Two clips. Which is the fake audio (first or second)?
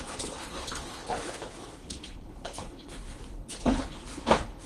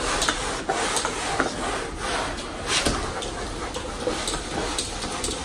first